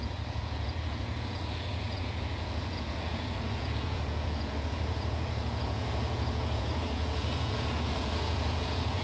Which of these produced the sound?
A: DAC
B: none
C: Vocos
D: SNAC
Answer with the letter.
C